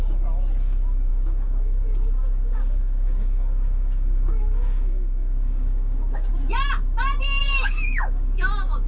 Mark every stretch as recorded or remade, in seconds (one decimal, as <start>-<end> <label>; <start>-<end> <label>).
0.0-1.1 recorded; 1.1-6.3 remade; 6.3-7.4 recorded; 7.4-8.9 remade